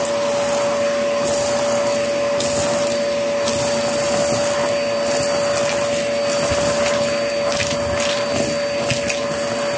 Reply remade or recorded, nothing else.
recorded